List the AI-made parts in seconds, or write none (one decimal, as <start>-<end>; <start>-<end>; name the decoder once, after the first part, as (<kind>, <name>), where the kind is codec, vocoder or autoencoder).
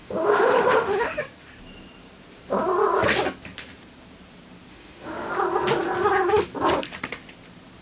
0.0-1.2 (autoencoder, DAC-VAE); 4.7-5.3